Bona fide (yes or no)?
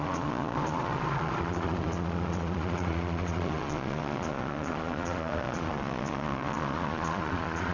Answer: no